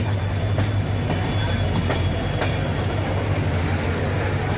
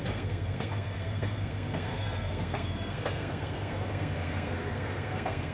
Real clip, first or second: first